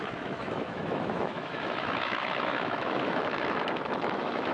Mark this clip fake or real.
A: fake